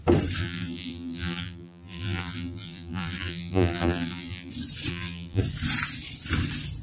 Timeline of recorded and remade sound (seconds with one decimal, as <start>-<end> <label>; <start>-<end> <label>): 0.0-0.4 recorded; 0.4-4.5 remade; 4.5-4.9 recorded; 4.9-5.4 remade; 5.4-6.8 recorded